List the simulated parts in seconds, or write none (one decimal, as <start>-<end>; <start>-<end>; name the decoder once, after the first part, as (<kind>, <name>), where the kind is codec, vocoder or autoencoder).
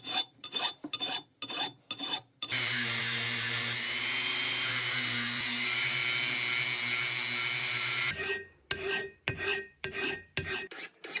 0.0-6.0 (vocoder, BigVGAN v2); 7.6-11.2